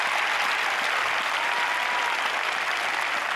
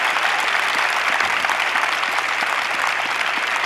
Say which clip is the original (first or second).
first